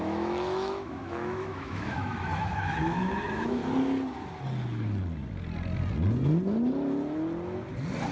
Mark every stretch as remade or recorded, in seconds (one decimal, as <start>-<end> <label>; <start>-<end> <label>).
0.0-3.6 remade; 3.6-8.1 recorded